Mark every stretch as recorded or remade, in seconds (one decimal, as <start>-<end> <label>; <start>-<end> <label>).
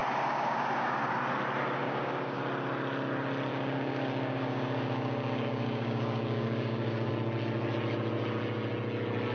0.0-1.1 remade; 1.1-1.8 recorded; 1.8-2.4 remade; 2.4-3.5 recorded; 3.5-7.1 remade; 7.1-9.3 recorded